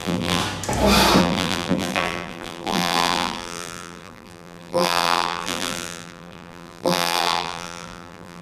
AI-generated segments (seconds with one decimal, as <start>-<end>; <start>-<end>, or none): 0.0-0.4; 1.2-8.4